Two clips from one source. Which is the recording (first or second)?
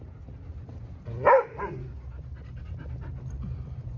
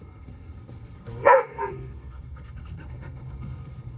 first